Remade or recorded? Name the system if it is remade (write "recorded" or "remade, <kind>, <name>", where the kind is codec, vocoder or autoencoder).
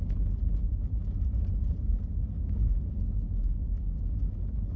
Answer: recorded